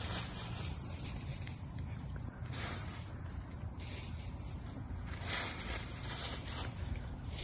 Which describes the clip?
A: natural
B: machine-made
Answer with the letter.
B